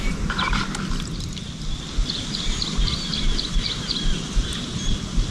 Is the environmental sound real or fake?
real